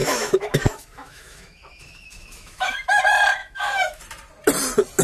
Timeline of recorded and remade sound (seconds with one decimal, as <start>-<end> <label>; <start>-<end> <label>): 0.0-3.0 remade; 3.0-3.4 recorded; 3.4-4.0 remade; 4.0-5.0 recorded